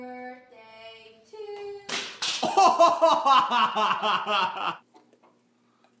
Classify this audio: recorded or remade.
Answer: recorded